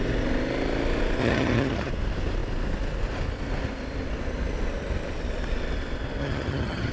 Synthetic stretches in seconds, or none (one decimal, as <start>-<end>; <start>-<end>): 1.2-1.9; 6.2-6.9